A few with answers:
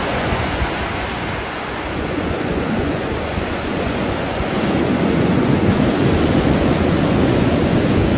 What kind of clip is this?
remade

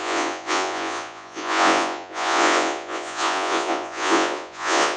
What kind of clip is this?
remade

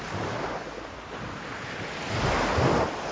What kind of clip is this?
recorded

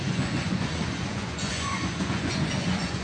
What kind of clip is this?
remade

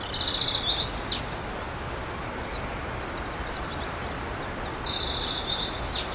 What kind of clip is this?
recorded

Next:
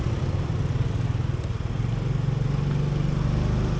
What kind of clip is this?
recorded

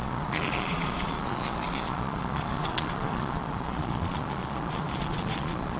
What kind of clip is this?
remade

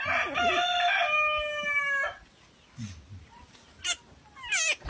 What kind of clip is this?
recorded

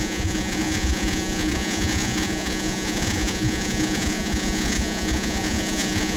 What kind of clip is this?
remade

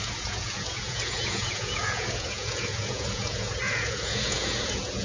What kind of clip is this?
remade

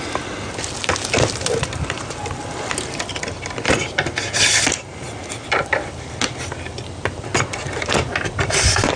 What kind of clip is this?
recorded